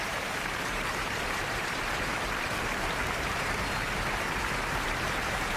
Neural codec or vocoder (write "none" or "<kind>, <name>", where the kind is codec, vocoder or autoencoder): vocoder, BigVGAN v2